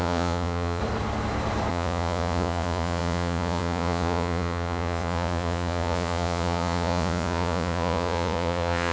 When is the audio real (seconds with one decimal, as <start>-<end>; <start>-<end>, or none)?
0.8-1.7